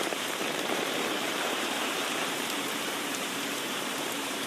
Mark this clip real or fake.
fake